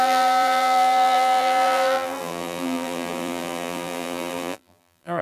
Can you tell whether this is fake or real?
fake